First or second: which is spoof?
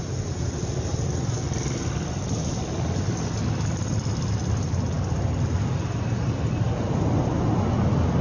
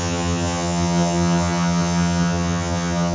second